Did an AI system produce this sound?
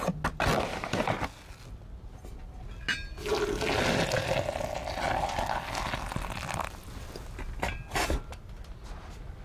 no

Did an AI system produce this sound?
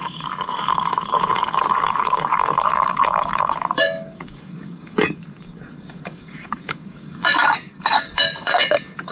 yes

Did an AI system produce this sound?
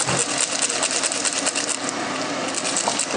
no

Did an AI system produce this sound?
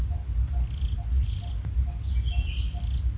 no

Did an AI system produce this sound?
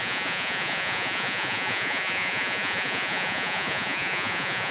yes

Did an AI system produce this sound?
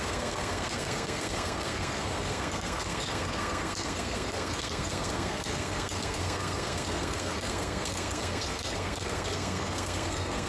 yes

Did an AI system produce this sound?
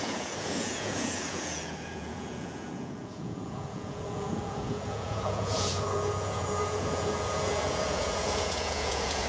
yes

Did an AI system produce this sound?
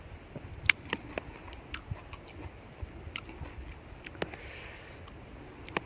no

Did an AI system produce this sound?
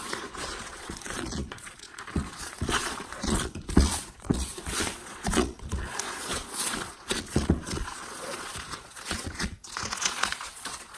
yes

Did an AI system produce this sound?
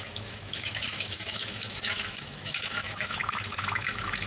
yes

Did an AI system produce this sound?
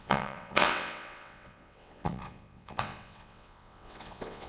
yes